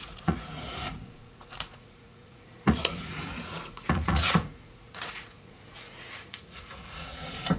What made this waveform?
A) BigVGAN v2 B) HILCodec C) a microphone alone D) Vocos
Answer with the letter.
D